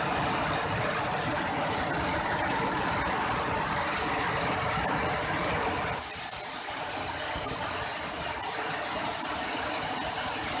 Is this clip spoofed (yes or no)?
no